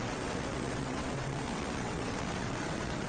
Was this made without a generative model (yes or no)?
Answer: no